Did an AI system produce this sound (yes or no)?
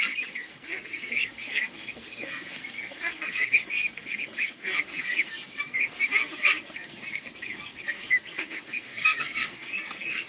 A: yes